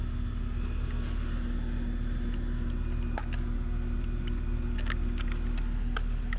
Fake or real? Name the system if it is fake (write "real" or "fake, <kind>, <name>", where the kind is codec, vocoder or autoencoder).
real